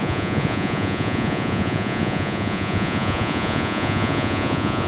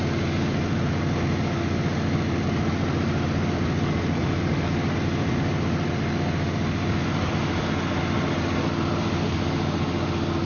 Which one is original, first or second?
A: second